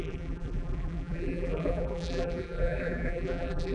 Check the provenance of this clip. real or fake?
fake